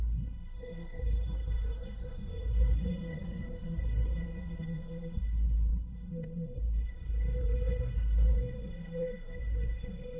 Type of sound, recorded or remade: remade